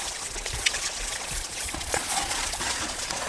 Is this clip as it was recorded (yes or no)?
no